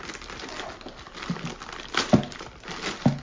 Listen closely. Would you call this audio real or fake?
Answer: real